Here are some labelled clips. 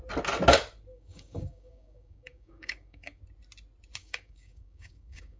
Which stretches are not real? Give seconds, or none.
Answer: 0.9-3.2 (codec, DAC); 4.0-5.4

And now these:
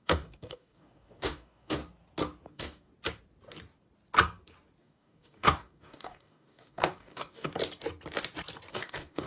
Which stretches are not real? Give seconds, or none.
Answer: 0.0-1.8 (codec, DAC); 2.5-2.9; 4.8-7.5; 8.7-9.3

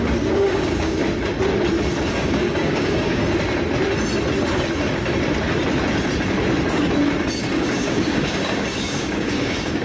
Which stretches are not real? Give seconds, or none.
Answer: 0.0-1.0 (codec, DAC); 2.1-3.2; 7.3-9.8

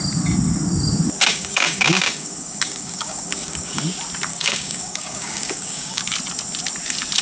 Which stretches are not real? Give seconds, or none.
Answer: 1.3-3.8 (codec, DAC); 4.3-6.0